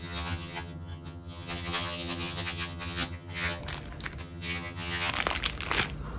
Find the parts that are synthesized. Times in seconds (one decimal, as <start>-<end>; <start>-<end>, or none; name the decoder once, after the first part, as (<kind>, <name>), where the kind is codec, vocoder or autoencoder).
0.0-3.6 (vocoder, HiFi-GAN); 4.2-5.1

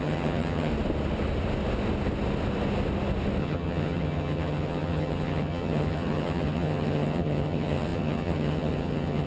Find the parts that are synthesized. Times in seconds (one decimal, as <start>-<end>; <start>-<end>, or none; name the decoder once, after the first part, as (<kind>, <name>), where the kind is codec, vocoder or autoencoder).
0.0-0.7 (vocoder, HiFi-GAN); 3.4-9.3

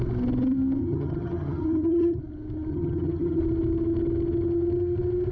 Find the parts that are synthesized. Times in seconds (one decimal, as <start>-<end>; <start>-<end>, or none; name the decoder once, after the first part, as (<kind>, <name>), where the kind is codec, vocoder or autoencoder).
0.8-2.2 (vocoder, HiFi-GAN); 2.7-3.4

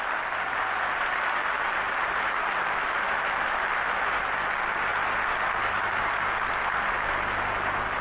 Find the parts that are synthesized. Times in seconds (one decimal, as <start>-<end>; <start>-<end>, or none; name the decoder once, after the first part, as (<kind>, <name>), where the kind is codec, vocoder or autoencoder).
none

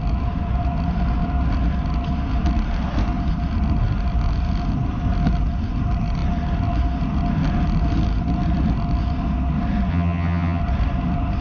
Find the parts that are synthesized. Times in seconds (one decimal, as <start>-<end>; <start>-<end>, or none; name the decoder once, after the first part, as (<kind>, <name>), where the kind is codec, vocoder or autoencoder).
9.9-10.6 (vocoder, HiFi-GAN)

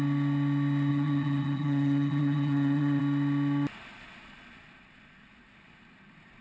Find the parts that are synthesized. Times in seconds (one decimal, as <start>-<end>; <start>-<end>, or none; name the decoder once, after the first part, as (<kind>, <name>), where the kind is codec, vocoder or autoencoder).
0.9-3.0 (vocoder, HiFi-GAN)